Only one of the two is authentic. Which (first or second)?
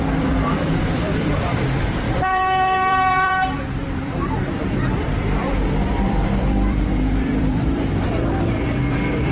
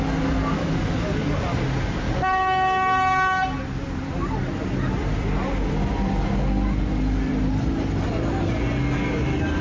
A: second